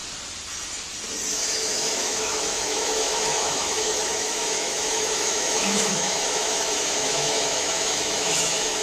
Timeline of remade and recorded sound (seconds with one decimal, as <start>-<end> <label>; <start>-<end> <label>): 0.0-1.3 recorded; 1.3-8.8 remade